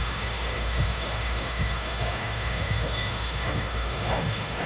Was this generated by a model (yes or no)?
yes